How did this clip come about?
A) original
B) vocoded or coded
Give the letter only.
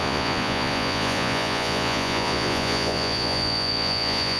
B